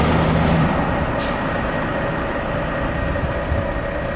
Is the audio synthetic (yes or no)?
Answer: no